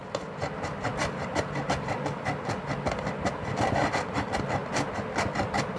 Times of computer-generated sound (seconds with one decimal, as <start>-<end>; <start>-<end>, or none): none